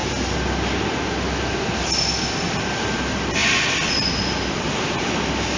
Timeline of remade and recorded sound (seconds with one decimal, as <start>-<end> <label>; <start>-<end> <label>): 0.0-1.6 recorded; 1.6-3.4 remade; 3.4-4.3 recorded; 4.3-5.6 remade